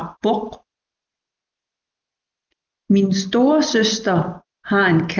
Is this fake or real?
real